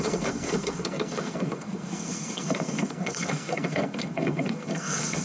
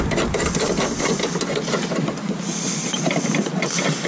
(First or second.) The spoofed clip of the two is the first